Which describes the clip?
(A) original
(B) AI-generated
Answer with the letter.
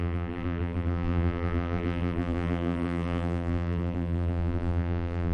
B